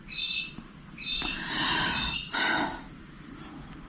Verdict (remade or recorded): recorded